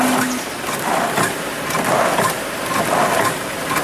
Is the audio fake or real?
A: real